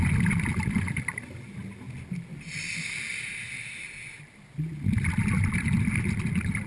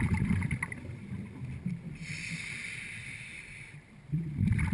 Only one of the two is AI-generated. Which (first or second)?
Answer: second